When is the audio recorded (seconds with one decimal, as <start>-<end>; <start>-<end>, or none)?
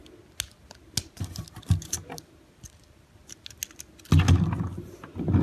0.0-5.4